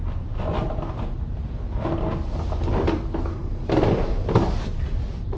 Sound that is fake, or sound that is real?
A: real